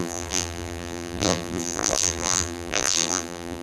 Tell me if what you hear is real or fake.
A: fake